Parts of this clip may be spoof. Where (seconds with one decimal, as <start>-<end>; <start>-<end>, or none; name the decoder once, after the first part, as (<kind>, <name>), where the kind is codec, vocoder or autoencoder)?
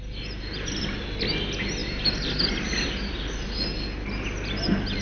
1.8-3.2 (vocoder, BigVGAN v2)